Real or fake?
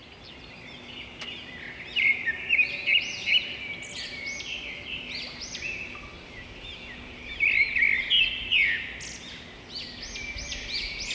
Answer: real